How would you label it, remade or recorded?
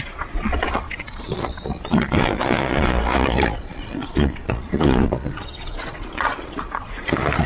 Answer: remade